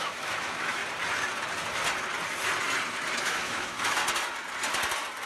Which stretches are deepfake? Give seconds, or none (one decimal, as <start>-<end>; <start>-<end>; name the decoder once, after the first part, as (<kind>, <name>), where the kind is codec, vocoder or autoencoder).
0.0-0.8 (autoencoder, DAC-VAE); 3.2-4.0